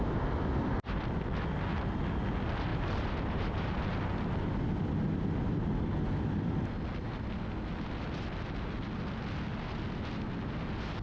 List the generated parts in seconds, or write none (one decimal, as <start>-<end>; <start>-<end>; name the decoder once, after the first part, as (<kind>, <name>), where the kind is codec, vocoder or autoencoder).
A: 2.7-4.0 (vocoder, BigVGAN v2)